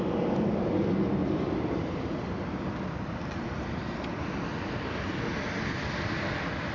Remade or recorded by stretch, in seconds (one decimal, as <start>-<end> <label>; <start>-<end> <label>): 0.0-1.2 recorded; 1.2-5.2 remade; 5.2-6.7 recorded

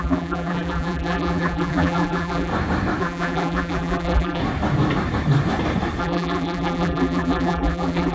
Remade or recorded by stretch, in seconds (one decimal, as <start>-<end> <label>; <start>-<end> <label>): 0.0-2.5 remade; 2.5-3.0 recorded; 3.0-4.4 remade; 4.4-6.0 recorded; 6.0-8.1 remade

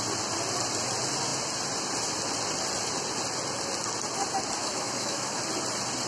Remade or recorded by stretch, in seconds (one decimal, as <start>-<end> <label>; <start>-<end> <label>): 0.0-4.6 recorded; 4.6-5.4 remade; 5.4-6.1 recorded

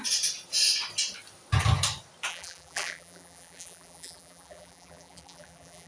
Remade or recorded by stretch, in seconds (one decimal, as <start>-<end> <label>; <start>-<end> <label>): 0.0-2.3 recorded; 2.3-5.9 remade

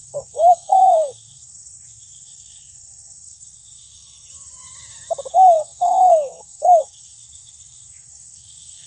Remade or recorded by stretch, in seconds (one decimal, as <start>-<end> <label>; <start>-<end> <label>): 0.0-4.3 remade; 4.3-5.3 recorded; 5.3-8.9 remade